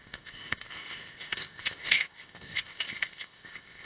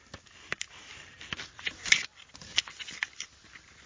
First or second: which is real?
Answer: second